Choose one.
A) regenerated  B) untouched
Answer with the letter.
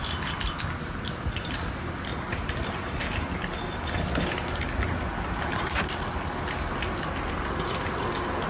B